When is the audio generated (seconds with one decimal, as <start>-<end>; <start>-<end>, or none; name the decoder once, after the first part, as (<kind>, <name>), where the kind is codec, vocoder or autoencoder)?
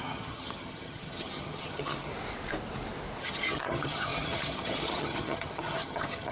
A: 0.0-2.1 (vocoder, HiFi-GAN); 3.2-6.3